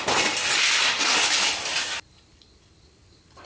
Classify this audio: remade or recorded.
recorded